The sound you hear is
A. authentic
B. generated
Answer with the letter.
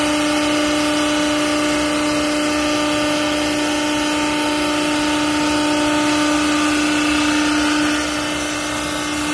A